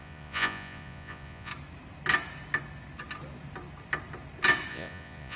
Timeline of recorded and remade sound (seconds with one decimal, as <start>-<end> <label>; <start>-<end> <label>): 0.0-1.5 remade; 1.5-4.7 recorded; 4.7-5.4 remade